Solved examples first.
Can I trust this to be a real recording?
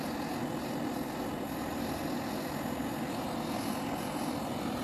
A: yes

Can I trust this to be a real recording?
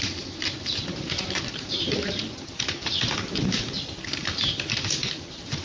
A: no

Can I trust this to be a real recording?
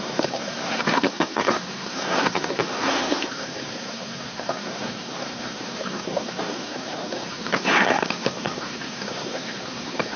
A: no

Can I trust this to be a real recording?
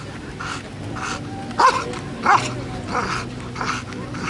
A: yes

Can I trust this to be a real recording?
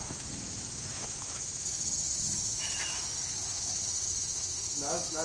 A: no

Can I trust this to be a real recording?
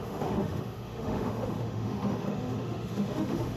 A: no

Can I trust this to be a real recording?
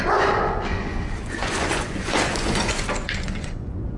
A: no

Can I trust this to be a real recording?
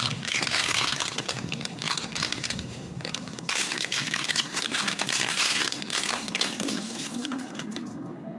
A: no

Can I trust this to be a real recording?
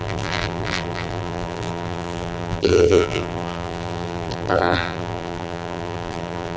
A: no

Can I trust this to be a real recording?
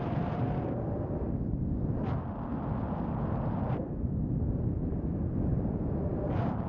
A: no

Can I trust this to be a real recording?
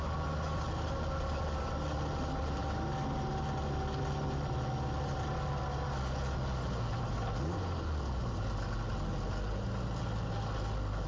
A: yes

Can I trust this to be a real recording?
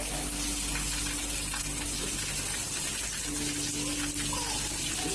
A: yes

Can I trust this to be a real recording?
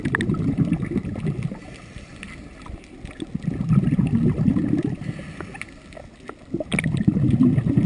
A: yes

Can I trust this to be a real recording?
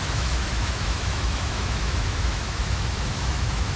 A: no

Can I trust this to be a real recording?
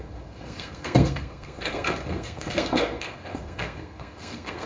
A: no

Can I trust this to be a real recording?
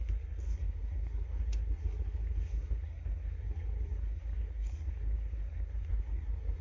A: no